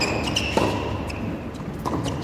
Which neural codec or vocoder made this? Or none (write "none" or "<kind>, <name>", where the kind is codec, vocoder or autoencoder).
none